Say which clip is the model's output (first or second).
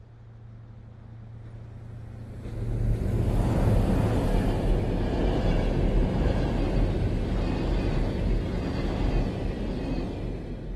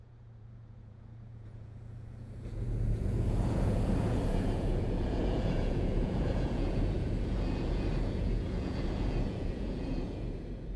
second